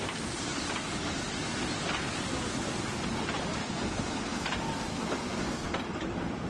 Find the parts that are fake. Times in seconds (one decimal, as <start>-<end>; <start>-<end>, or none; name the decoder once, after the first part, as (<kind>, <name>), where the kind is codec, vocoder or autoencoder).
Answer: 3.6-4.4 (codec, SNAC); 4.9-5.8